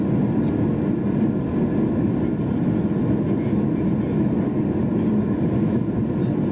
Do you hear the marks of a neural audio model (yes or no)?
no